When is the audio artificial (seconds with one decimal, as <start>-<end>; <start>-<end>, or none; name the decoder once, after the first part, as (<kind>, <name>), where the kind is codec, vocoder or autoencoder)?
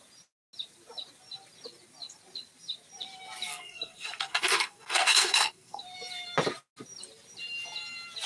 3.5-5.8 (codec, SNAC)